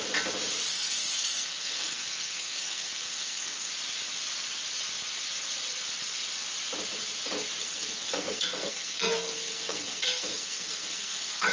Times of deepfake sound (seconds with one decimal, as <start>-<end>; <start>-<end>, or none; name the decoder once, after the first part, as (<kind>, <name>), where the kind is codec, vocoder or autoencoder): 0.7-3.7 (codec, SNAC); 7.6-11.5